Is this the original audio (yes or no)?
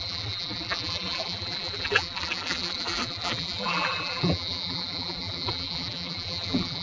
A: no